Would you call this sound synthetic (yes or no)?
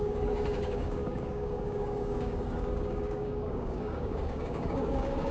yes